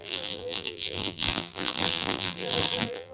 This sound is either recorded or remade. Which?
remade